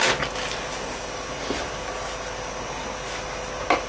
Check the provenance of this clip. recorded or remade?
recorded